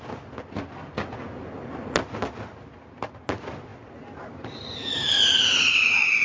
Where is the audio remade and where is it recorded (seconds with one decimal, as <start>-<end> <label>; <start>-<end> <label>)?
0.0-6.2 recorded